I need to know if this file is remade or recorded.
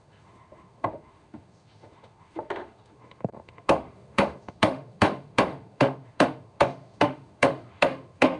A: remade